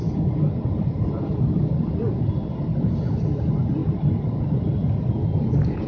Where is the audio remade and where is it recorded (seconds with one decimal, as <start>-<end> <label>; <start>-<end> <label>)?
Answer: 0.0-5.9 recorded